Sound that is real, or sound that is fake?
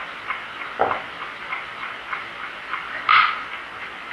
real